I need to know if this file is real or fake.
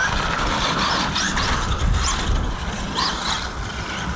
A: real